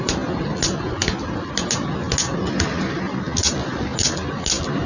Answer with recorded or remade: recorded